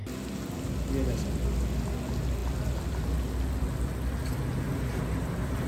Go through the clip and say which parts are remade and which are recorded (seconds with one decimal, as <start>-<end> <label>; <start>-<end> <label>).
0.0-5.7 recorded

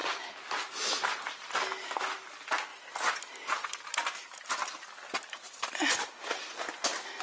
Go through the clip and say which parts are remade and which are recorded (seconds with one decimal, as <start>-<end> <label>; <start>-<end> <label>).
0.0-7.2 recorded

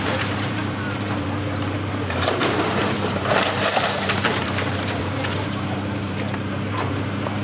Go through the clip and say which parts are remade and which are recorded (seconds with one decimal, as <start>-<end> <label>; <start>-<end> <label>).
0.0-7.4 remade

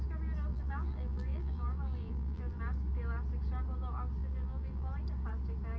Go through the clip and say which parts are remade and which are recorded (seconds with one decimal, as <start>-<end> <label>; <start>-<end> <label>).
0.0-0.5 recorded; 0.5-2.6 remade; 2.6-4.2 recorded; 4.2-4.9 remade; 4.9-5.8 recorded

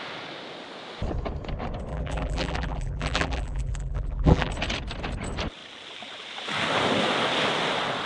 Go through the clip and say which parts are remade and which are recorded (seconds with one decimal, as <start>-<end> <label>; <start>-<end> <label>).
0.0-1.9 recorded; 1.9-4.5 remade; 4.5-8.1 recorded

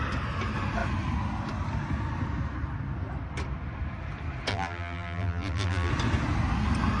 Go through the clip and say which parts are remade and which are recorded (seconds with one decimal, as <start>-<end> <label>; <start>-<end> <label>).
0.0-4.5 recorded; 4.5-5.9 remade; 5.9-7.0 recorded